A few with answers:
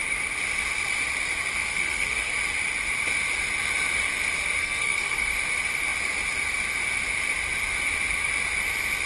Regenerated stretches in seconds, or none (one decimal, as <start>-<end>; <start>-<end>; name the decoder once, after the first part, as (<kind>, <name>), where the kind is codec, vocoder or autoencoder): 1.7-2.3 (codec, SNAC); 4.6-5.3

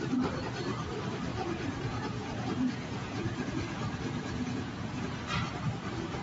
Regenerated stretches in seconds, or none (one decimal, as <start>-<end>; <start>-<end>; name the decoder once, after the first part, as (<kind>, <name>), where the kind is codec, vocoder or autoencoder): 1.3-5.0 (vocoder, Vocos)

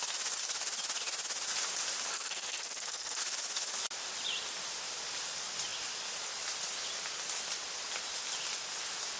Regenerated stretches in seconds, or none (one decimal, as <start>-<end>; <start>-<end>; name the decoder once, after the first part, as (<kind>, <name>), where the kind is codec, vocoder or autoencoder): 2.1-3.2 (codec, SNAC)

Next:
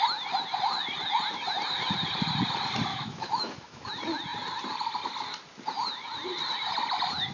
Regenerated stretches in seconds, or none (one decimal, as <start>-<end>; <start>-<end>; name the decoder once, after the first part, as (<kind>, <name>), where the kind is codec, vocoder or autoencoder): 2.9-3.9 (autoencoder, DAC-VAE)

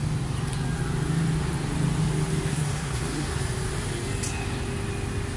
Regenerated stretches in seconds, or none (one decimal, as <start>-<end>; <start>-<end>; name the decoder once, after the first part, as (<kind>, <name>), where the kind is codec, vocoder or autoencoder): 2.5-3.4 (codec, SNAC)

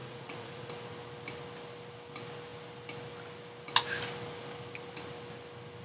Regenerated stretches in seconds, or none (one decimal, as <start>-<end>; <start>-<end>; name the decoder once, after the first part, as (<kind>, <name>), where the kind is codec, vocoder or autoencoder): 0.0-0.7 (vocoder, Vocos)

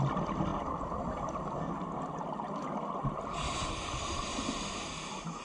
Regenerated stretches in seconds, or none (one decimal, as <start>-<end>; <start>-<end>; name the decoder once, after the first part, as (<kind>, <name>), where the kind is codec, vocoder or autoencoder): none

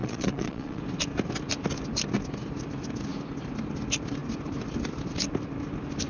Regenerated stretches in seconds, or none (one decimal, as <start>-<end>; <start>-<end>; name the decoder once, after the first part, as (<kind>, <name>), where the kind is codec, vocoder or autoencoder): 0.0-0.8 (vocoder, Vocos)